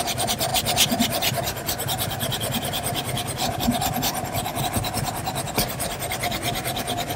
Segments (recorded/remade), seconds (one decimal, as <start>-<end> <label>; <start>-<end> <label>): 0.0-7.2 recorded